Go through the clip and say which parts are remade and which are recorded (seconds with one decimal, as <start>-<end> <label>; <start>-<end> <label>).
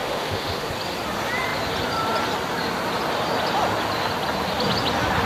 0.0-0.7 remade; 0.7-5.3 recorded